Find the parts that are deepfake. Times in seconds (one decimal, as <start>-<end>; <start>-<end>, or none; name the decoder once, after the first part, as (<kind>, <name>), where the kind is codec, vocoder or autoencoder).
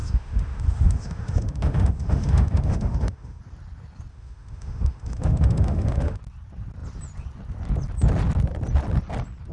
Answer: 0.0-3.4 (autoencoder, DAC-VAE); 4.1-6.2